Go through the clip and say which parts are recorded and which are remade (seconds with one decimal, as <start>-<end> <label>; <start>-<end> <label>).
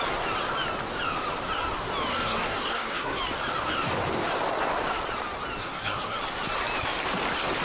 0.0-2.1 recorded; 2.1-3.2 remade; 3.2-5.6 recorded; 5.6-6.2 remade; 6.2-7.6 recorded